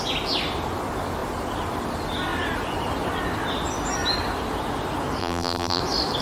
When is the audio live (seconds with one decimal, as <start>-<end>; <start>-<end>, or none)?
0.0-5.2; 5.8-6.2